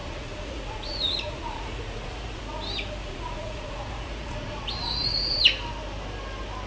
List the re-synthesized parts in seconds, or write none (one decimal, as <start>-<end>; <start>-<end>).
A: 0.0-2.4; 3.0-5.4